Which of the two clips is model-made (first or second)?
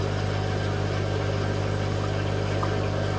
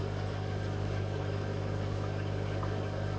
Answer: second